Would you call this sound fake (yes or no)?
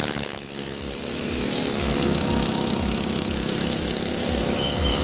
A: yes